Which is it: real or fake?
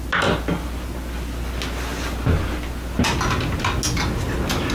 real